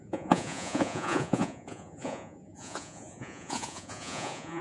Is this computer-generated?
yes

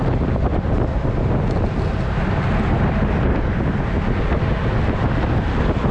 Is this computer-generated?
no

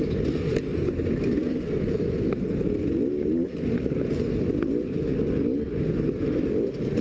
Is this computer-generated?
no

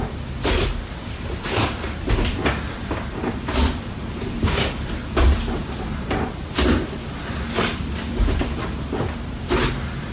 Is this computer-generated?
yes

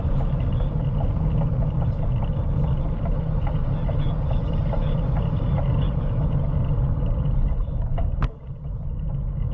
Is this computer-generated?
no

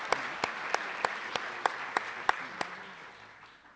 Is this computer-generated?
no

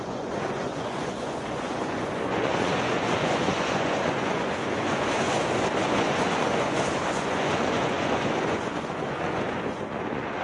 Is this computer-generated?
yes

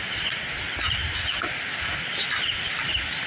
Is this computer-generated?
no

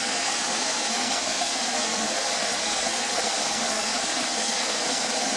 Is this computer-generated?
yes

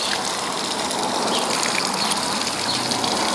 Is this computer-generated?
no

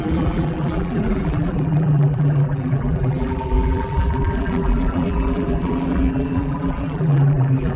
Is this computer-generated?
yes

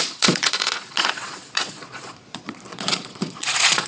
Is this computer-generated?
yes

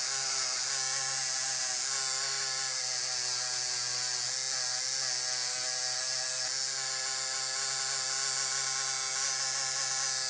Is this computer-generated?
no